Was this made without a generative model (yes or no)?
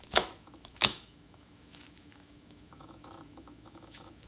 no